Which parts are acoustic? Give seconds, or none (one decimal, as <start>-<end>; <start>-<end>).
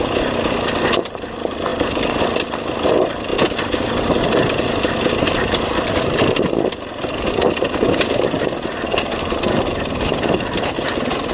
0.0-1.7; 2.2-11.3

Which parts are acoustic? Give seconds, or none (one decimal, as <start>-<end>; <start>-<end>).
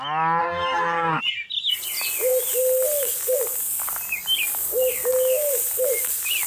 0.0-0.4; 1.2-6.5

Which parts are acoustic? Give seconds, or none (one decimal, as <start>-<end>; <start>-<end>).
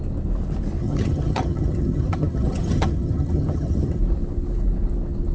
0.0-0.8; 4.0-5.3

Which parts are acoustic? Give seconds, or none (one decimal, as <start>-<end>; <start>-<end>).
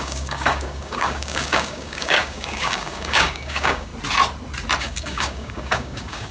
3.9-4.8